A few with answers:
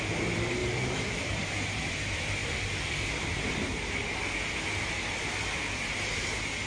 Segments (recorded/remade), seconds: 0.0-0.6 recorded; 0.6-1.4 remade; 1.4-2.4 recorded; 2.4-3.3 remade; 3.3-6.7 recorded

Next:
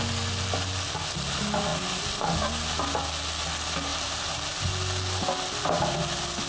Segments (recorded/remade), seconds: 0.0-3.9 recorded; 3.9-4.5 remade; 4.5-6.5 recorded

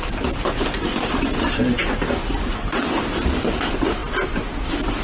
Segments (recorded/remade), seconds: 0.0-5.0 recorded

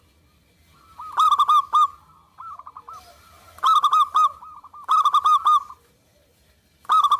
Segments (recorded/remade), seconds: 0.0-7.2 recorded

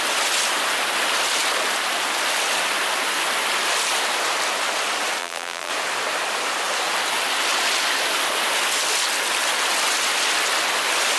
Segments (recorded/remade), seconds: 0.0-5.2 recorded; 5.2-5.7 remade; 5.7-11.2 recorded

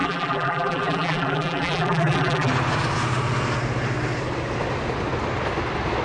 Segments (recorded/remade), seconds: 0.0-2.5 remade; 2.5-6.0 recorded

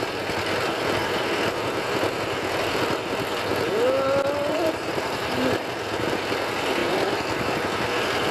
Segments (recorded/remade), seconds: 0.0-4.5 recorded; 4.5-5.6 remade; 5.6-8.3 recorded